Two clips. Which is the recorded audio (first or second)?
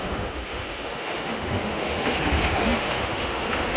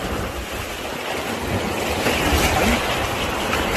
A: second